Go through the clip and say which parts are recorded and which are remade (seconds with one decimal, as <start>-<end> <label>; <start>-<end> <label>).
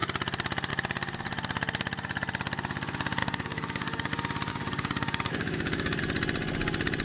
0.0-3.2 recorded; 3.2-4.1 remade; 4.1-4.5 recorded; 4.5-6.0 remade; 6.0-7.0 recorded